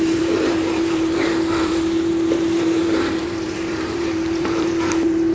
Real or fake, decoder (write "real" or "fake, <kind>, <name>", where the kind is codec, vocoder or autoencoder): fake, vocoder, BigVGAN v2